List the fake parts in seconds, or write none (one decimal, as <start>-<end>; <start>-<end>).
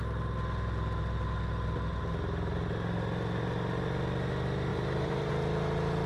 4.7-5.3